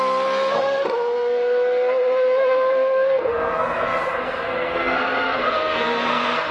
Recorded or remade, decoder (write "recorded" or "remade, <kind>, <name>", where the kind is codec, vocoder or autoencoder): remade, codec, SNAC